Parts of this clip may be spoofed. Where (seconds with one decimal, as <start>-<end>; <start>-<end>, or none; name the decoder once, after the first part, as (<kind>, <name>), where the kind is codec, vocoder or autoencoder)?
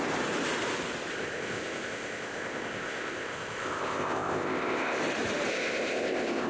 1.1-5.0 (codec, ZipCodec); 5.5-6.5